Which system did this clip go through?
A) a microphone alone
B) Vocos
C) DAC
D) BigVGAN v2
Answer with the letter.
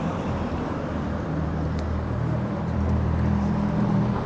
D